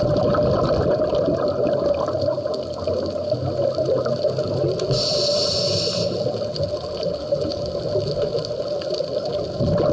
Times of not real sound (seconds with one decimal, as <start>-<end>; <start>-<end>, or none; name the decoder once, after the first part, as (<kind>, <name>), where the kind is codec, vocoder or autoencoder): none

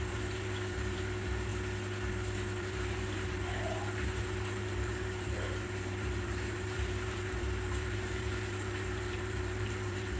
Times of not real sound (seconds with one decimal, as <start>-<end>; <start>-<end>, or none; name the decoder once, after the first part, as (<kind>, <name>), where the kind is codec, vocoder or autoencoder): 0.0-1.5 (vocoder, BigVGAN v2); 2.6-10.2

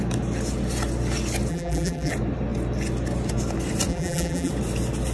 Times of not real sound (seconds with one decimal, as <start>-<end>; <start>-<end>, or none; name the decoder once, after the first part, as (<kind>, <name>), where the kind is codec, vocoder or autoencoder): 1.5-2.1 (vocoder, BigVGAN v2); 3.9-4.5

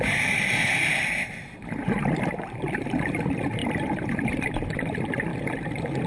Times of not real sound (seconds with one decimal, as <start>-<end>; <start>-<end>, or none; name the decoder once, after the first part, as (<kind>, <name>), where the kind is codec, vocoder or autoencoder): 3.6-4.1 (vocoder, BigVGAN v2)

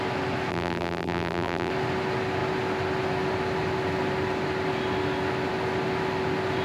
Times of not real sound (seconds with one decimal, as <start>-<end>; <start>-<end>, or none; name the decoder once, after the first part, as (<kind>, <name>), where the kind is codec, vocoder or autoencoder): 0.5-1.7 (vocoder, BigVGAN v2)

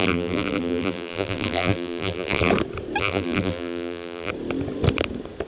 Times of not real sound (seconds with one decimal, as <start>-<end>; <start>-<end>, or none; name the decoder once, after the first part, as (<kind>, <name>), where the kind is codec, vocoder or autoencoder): 0.0-2.5 (vocoder, BigVGAN v2); 3.0-4.3